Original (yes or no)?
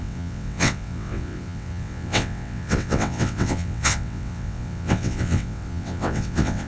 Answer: no